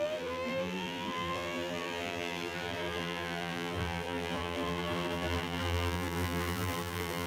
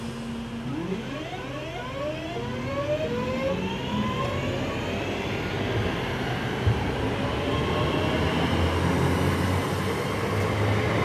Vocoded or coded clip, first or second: first